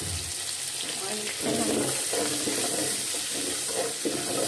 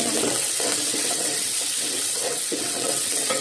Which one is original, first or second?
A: first